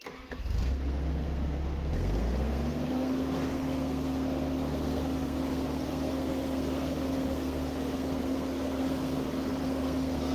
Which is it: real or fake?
fake